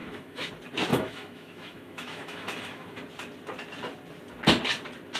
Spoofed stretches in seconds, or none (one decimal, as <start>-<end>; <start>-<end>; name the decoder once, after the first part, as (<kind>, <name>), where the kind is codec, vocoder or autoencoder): 0.0-0.5 (autoencoder, DAC-VAE); 0.9-3.0